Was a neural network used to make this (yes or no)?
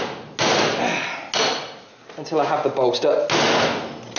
no